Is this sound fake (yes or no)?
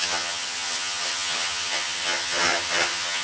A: yes